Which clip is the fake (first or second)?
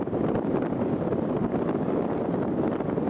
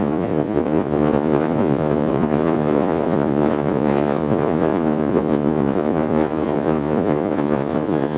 second